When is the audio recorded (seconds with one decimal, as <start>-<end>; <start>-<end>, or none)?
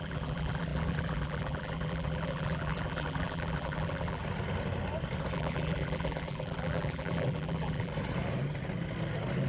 4.2-5.3; 7.9-9.5